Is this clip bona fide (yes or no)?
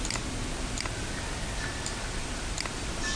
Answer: yes